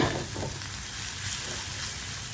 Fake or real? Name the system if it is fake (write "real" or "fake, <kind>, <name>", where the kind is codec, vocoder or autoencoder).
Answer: real